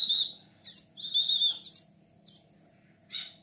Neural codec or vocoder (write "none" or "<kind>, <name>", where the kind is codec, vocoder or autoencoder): none